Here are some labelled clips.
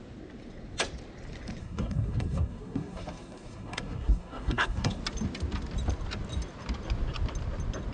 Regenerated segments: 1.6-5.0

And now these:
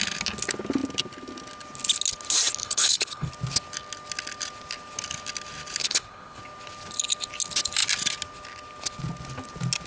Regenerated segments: 2.6-3.3; 5.8-6.4

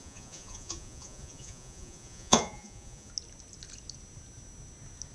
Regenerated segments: 0.0-3.1

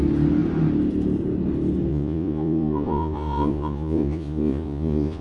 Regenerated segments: 1.9-5.2